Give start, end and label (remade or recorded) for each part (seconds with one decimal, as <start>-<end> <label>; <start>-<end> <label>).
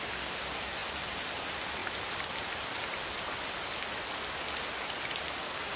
0.0-0.8 recorded; 0.8-1.4 remade; 1.4-5.8 recorded